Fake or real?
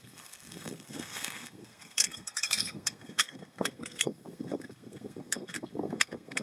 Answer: fake